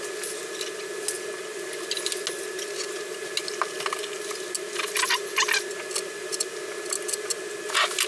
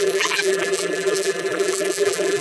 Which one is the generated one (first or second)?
second